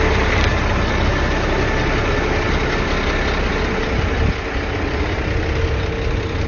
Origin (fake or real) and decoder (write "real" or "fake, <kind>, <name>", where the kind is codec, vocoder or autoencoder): real